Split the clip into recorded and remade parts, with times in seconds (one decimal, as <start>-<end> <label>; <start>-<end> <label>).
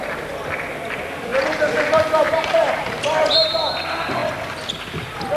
0.0-1.3 recorded; 1.3-2.7 remade; 2.7-5.4 recorded